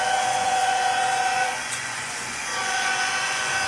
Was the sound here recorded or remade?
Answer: remade